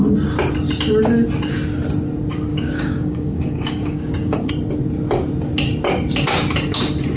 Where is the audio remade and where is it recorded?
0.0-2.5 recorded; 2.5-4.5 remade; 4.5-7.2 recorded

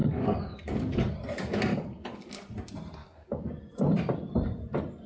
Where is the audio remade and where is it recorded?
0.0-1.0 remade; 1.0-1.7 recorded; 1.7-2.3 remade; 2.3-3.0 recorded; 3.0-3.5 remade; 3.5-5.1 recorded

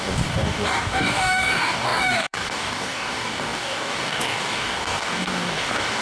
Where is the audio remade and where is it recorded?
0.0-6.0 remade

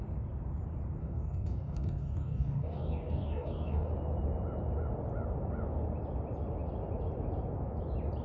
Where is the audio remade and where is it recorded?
0.0-1.0 recorded; 1.0-3.9 remade; 3.9-8.2 recorded